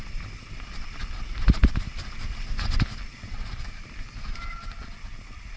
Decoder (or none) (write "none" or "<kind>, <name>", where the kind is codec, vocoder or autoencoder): none